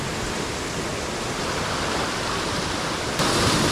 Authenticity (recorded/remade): recorded